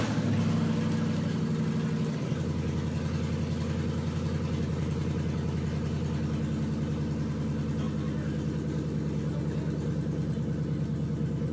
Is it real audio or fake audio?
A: real